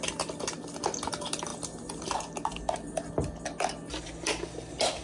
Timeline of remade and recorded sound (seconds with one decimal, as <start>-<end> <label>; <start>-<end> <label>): 0.0-5.0 recorded